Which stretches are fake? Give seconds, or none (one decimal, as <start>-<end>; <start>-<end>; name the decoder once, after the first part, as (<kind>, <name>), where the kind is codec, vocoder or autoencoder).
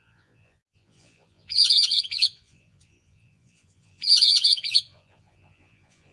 0.0-6.1 (vocoder, Vocos)